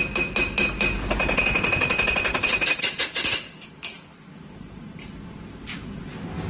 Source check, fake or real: real